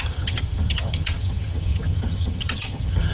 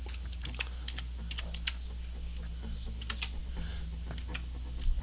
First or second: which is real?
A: second